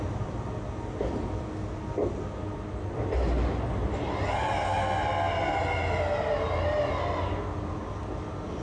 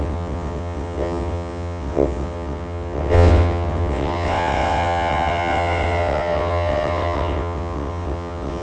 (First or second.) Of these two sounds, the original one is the first